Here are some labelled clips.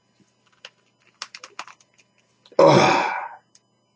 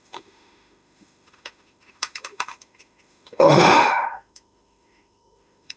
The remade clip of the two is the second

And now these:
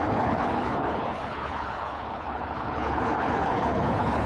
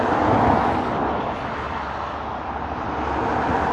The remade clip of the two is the first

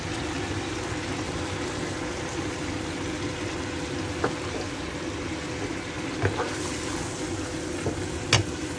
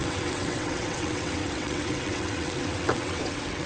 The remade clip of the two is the second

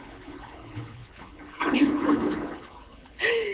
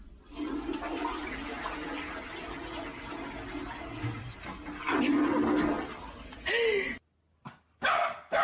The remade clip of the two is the first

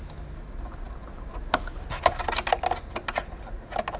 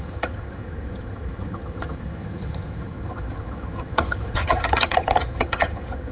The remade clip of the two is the second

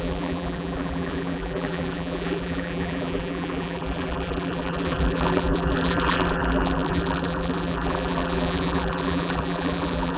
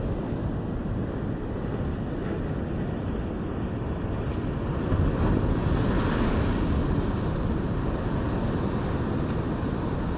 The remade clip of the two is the first